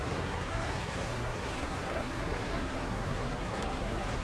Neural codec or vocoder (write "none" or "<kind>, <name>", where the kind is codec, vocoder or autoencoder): codec, SNAC